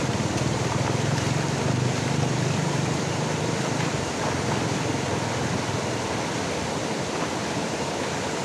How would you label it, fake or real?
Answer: fake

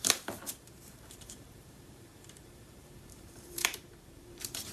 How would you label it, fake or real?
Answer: fake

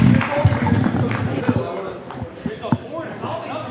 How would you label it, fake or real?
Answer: real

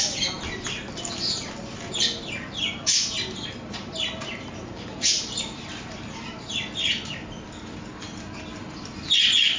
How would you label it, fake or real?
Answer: fake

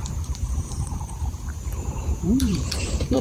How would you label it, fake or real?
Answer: fake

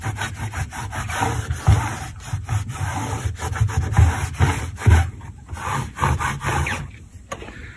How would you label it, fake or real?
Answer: fake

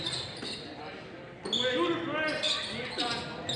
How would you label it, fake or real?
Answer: real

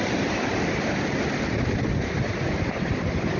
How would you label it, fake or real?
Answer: real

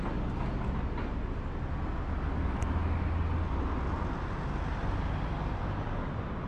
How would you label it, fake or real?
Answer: real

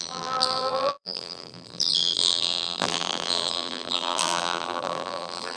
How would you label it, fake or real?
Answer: fake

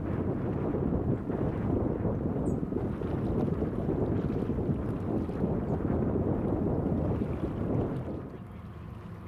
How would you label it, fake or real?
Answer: real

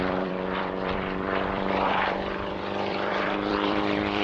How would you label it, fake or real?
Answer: fake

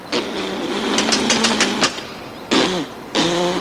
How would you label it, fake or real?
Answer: real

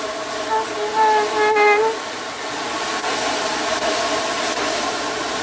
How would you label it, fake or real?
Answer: real